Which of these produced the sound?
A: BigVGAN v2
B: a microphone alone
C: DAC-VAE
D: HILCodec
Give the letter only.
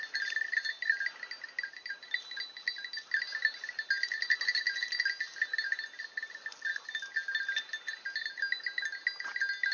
B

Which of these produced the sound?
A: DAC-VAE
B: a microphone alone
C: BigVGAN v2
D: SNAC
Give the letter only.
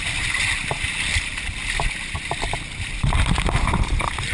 B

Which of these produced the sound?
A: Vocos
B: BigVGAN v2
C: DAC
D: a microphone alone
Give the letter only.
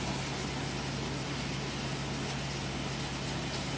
D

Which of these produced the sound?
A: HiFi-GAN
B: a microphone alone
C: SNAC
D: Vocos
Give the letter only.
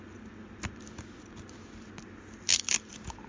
B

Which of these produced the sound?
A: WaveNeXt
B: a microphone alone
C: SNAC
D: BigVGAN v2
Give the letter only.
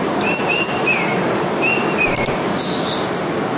D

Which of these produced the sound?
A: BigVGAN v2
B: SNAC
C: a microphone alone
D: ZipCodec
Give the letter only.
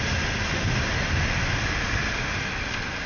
C